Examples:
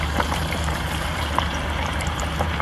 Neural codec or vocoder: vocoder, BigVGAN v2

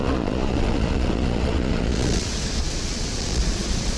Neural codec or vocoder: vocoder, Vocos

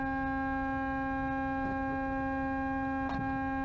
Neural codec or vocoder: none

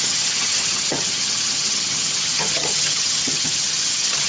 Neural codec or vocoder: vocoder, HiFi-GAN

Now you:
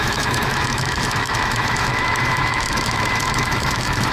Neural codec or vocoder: autoencoder, DAC-VAE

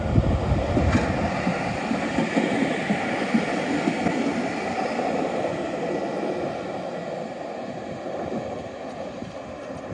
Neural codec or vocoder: none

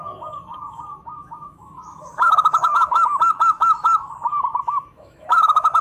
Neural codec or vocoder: autoencoder, DAC-VAE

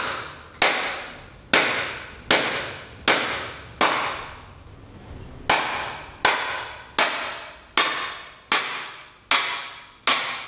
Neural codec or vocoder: none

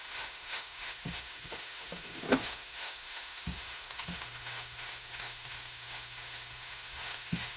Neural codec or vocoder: autoencoder, DAC-VAE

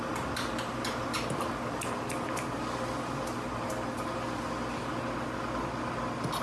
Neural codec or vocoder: none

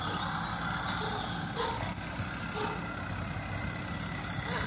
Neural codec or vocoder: none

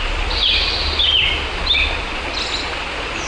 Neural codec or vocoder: none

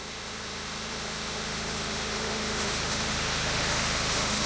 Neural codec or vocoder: autoencoder, DAC-VAE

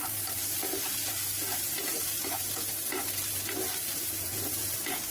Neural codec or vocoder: vocoder, BigVGAN v2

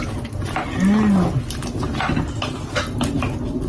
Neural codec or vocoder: none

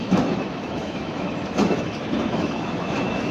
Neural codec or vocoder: autoencoder, DAC-VAE